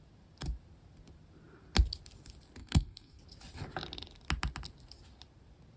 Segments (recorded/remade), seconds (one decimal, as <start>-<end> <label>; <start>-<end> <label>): 0.0-2.6 recorded; 2.6-3.2 remade; 3.2-5.8 recorded